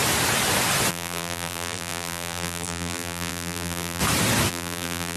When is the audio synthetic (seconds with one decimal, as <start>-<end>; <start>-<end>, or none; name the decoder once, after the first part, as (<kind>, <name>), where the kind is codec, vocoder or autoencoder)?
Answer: 0.9-4.0 (vocoder, BigVGAN v2); 4.5-5.2

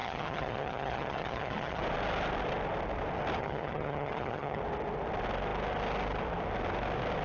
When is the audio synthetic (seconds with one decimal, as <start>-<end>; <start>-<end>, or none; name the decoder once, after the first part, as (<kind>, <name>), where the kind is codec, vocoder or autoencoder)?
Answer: 0.0-1.8 (vocoder, HiFi-GAN); 3.4-4.6